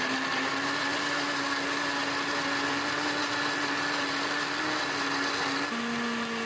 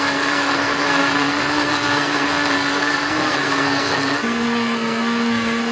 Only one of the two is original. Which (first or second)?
first